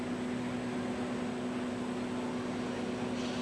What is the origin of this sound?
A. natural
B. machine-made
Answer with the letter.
A